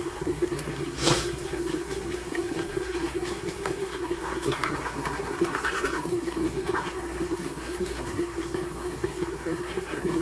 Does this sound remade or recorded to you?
remade